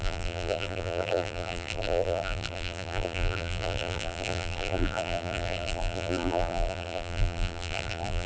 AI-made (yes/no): yes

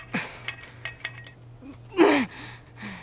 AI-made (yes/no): no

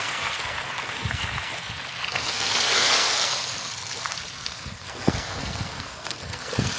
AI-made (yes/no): yes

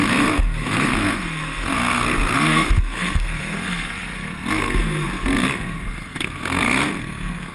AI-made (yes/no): yes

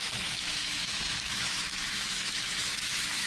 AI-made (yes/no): yes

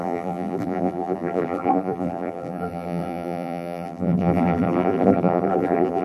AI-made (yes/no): yes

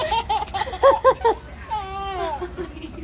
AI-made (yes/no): no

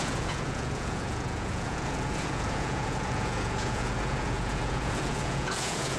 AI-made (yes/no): yes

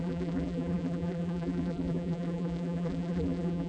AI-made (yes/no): yes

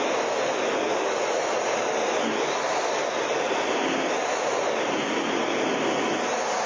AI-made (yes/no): no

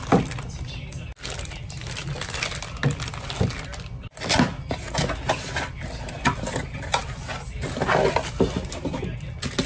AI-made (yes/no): no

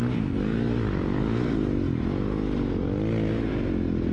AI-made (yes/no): no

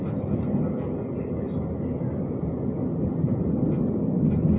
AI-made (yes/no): no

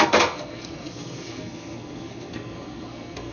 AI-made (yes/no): yes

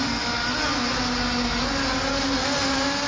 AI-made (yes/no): no